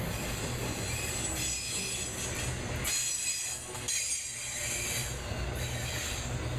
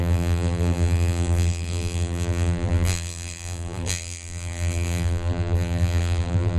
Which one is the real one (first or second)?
first